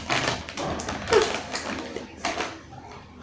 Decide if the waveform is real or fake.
fake